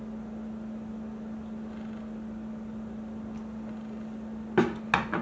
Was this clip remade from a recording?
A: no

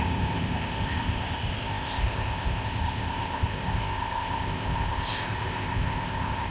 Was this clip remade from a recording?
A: yes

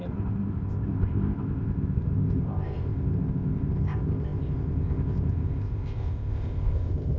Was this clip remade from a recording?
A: yes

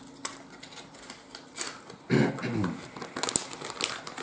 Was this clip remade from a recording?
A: no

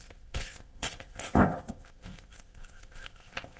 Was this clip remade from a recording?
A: yes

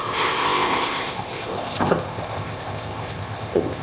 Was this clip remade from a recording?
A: yes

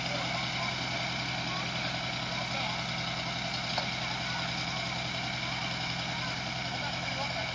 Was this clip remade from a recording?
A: no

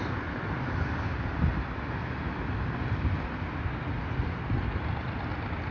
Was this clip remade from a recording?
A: no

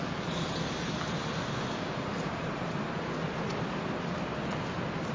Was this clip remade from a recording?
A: no